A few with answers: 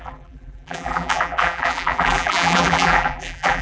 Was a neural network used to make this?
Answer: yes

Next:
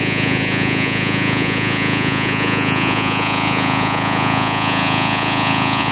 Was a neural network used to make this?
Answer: yes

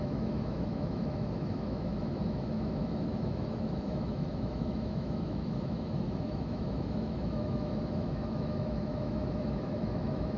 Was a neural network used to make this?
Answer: yes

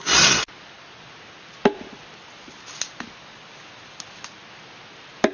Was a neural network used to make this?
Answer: no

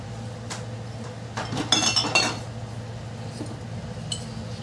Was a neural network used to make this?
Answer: no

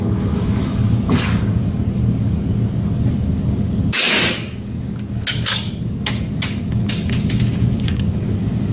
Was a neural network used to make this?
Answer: yes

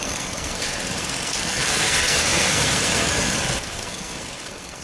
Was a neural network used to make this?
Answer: yes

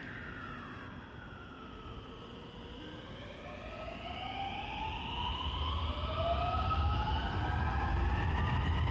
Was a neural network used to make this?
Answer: no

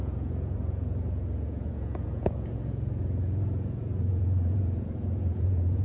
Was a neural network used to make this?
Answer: yes